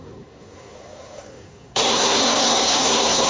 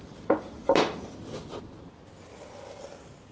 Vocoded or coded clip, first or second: first